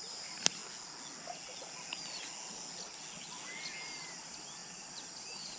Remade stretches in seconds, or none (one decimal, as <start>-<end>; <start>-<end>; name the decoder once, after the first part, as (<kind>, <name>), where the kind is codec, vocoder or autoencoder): 0.0-0.6 (vocoder, BigVGAN v2); 4.0-5.6